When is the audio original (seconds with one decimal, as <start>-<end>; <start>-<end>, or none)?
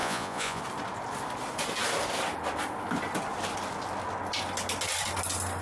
0.6-5.6